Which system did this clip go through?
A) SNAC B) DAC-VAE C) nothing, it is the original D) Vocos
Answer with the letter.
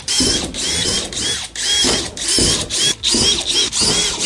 C